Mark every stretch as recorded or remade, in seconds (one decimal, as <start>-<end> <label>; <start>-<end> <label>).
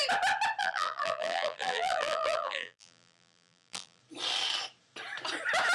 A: 0.0-0.6 recorded; 0.6-4.0 remade; 4.0-5.7 recorded